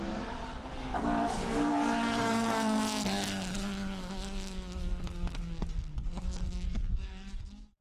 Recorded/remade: remade